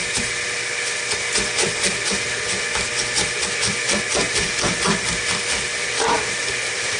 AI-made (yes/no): no